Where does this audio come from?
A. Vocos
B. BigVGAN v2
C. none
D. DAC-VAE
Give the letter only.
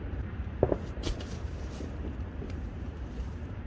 B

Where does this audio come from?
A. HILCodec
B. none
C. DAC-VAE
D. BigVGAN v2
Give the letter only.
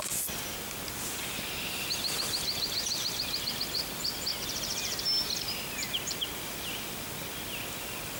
B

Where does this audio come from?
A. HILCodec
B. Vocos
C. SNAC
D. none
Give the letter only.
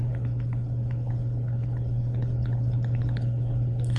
A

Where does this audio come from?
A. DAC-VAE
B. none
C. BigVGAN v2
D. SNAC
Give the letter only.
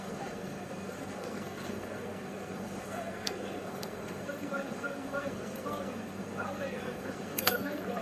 D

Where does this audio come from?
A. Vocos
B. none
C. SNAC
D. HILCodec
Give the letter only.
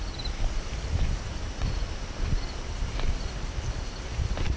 B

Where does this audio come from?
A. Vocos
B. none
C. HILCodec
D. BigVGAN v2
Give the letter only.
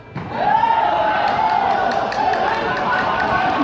B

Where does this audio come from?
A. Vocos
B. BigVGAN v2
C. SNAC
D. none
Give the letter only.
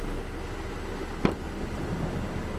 D